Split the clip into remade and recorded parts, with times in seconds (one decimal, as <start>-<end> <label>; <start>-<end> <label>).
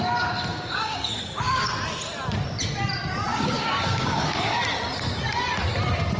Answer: 0.0-0.5 recorded; 0.5-1.7 remade; 1.7-3.3 recorded; 3.3-4.6 remade; 4.6-6.2 recorded